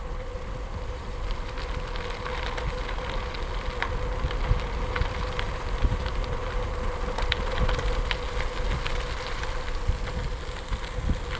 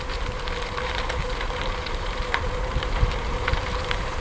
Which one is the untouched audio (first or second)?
first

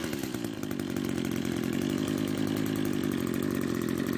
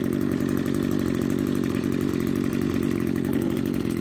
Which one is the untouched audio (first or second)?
first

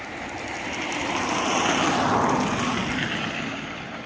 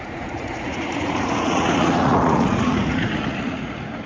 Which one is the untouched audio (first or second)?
first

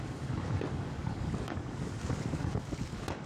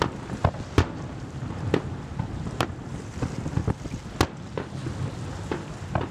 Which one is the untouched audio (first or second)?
second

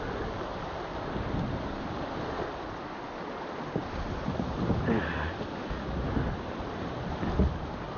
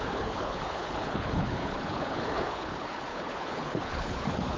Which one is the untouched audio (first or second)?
first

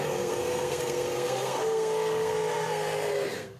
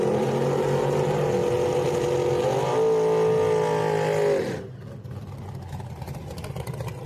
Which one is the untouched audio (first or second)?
second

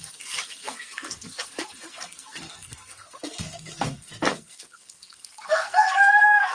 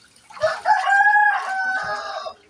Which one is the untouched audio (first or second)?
second